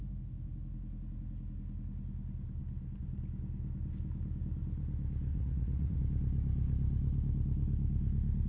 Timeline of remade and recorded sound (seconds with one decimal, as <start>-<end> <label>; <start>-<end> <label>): 0.0-5.3 recorded; 5.3-6.0 remade; 6.0-8.5 recorded